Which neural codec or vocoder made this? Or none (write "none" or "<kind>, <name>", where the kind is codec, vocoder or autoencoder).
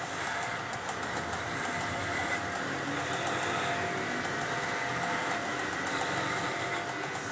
none